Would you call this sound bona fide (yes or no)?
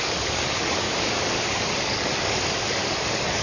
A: no